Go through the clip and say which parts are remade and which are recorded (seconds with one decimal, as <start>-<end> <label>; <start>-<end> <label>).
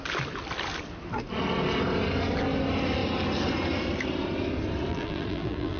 0.0-4.9 recorded; 4.9-5.8 remade